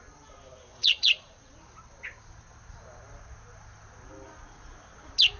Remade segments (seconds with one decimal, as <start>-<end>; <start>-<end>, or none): 0.7-1.5